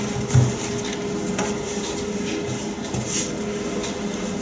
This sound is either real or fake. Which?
real